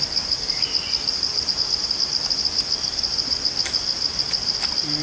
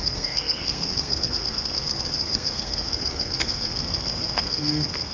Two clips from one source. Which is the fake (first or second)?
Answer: second